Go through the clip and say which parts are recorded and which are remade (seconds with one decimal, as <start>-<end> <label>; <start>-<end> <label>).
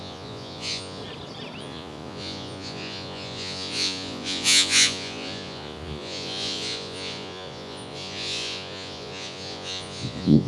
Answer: 0.0-1.0 remade; 1.0-1.6 recorded; 1.6-10.5 remade